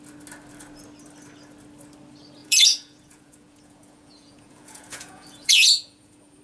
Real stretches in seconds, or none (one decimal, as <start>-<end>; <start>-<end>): 0.0-2.4